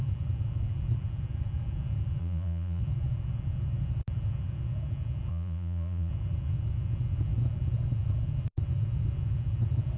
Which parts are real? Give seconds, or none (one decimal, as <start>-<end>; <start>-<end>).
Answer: 0.0-2.2; 2.8-5.3; 6.1-10.0